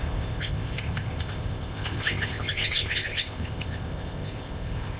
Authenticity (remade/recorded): remade